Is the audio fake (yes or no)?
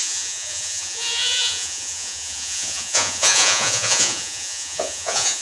yes